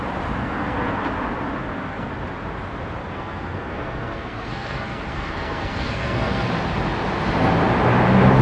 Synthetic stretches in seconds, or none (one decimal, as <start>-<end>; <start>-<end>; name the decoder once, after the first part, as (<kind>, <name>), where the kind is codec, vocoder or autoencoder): 0.4-1.1 (codec, SNAC); 1.6-2.1; 3.0-6.5